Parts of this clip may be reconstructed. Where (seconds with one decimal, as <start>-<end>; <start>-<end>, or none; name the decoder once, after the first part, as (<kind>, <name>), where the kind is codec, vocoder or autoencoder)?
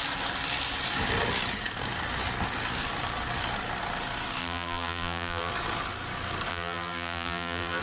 4.4-5.5 (vocoder, BigVGAN v2); 6.5-7.8